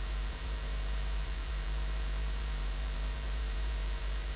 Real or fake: fake